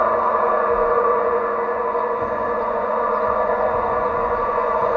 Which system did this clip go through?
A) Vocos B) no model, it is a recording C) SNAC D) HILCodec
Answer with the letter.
A